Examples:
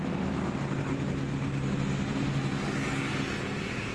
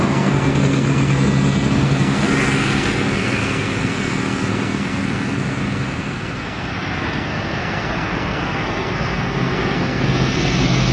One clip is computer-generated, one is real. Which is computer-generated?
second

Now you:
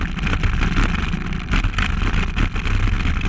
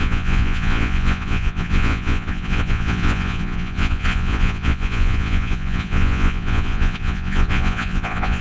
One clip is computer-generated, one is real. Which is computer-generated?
second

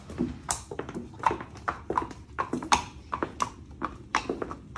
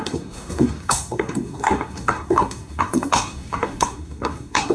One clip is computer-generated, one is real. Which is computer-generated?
second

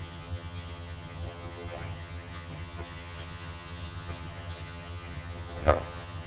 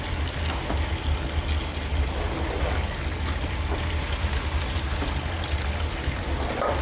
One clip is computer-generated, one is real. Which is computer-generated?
first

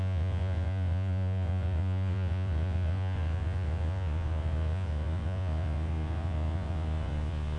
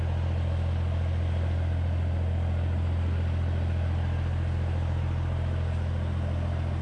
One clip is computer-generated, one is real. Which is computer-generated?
first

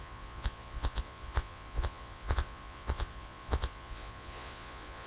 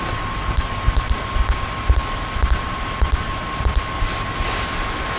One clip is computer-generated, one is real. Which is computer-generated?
first